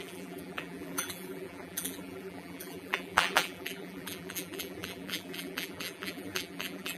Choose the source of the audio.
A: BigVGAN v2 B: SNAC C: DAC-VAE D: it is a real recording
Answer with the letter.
A